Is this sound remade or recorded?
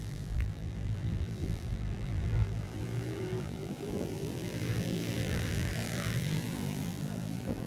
remade